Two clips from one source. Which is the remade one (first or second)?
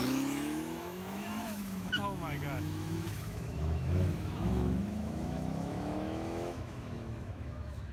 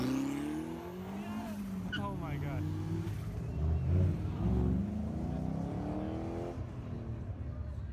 first